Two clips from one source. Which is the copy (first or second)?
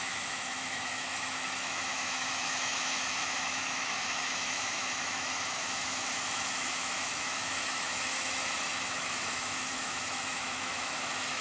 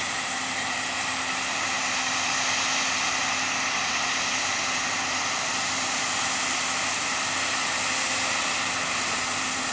first